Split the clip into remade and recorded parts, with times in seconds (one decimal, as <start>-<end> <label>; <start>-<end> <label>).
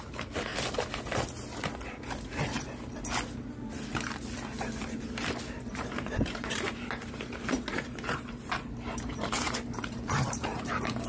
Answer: 0.0-0.5 remade; 0.5-4.8 recorded; 4.8-11.1 remade